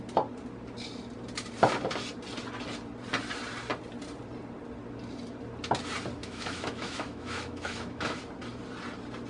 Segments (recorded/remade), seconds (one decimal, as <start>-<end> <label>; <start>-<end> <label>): 0.0-6.2 recorded; 6.2-8.2 remade; 8.2-9.3 recorded